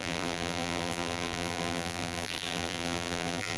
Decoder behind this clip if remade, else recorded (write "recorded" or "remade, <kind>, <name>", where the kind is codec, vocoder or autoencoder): remade, vocoder, BigVGAN v2